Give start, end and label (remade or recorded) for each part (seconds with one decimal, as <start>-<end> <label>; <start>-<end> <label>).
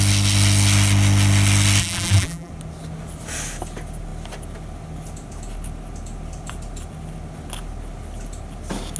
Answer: 0.0-1.8 recorded; 1.8-2.5 remade; 2.5-9.0 recorded